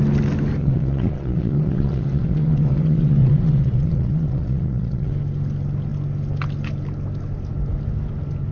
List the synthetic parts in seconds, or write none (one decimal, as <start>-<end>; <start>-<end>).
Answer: 0.6-5.1